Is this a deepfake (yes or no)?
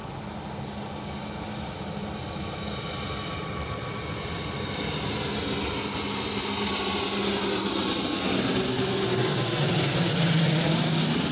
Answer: no